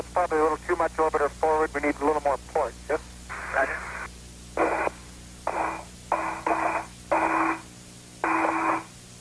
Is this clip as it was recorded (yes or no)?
yes